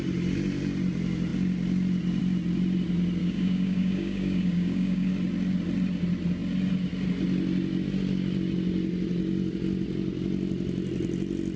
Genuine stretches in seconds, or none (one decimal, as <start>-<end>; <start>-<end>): 0.0-3.2; 5.1-11.6